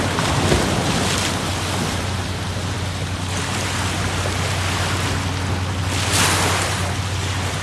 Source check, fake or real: real